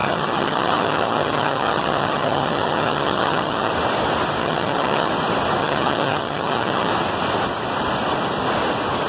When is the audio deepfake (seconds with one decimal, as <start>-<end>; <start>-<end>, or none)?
0.0-3.7; 4.4-5.1; 5.6-6.9